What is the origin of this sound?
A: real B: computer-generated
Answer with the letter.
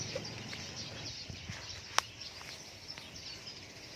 A